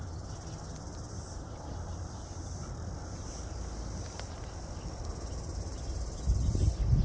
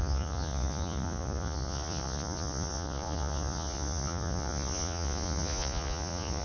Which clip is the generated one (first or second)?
second